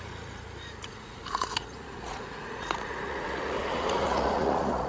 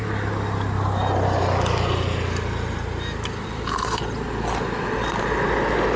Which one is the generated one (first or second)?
first